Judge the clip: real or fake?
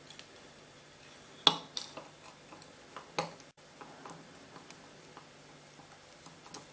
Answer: real